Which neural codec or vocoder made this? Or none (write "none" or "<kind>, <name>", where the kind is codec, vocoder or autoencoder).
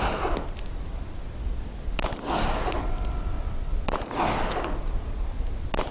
none